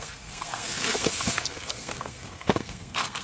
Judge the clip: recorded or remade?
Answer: remade